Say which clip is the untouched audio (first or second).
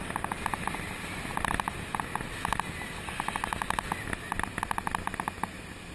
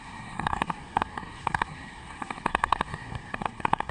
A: first